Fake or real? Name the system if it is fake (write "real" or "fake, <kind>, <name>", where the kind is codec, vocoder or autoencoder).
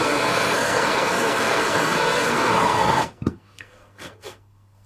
fake, codec, SNAC